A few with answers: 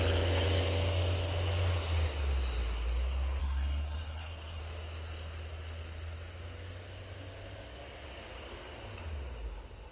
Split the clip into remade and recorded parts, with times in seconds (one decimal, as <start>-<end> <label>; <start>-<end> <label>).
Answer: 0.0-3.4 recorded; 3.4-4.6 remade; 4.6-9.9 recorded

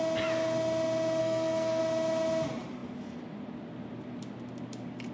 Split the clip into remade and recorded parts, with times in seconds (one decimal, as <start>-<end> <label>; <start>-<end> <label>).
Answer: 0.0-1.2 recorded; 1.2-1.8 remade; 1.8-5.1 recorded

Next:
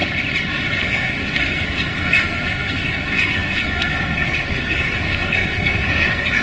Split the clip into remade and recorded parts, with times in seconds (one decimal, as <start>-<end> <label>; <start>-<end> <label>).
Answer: 0.0-0.8 recorded; 0.8-6.4 remade